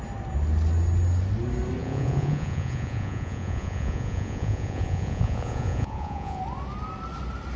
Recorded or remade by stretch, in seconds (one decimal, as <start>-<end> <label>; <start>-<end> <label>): 0.0-1.8 recorded; 1.8-6.4 remade; 6.4-7.6 recorded